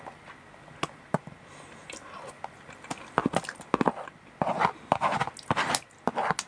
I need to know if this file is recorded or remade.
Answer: recorded